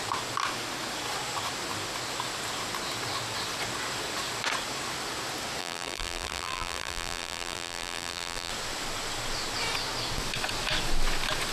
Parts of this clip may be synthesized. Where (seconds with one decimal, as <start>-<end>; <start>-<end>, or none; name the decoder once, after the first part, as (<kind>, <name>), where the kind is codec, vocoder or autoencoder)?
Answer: 5.6-8.5 (vocoder, BigVGAN v2)